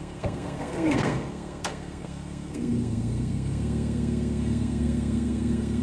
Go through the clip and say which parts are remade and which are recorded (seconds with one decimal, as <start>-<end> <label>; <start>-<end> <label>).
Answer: 0.0-5.8 remade